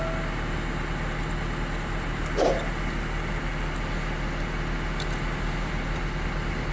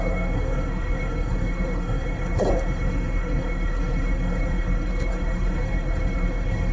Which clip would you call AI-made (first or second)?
second